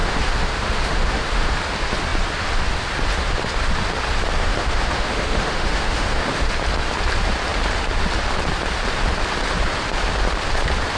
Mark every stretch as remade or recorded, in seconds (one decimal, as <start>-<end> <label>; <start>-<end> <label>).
0.0-1.5 remade; 1.5-4.4 recorded; 4.4-6.5 remade; 6.5-11.0 recorded